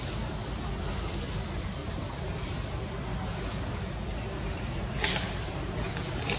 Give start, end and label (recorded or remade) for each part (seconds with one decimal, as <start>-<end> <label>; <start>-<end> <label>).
0.0-6.4 recorded